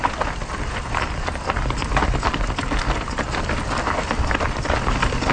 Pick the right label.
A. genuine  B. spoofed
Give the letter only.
A